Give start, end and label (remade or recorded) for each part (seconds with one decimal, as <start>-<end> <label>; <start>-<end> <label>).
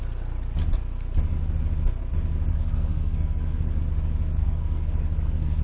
0.0-2.5 recorded; 2.5-3.8 remade; 3.8-4.4 recorded; 4.4-5.6 remade